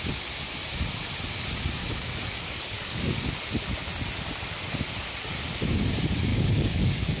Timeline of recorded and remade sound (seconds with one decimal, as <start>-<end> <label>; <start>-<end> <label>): 0.0-1.8 recorded; 1.8-3.2 remade; 3.2-6.3 recorded; 6.3-7.2 remade